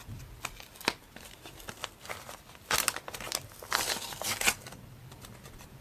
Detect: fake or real real